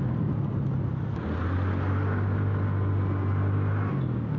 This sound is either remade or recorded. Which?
recorded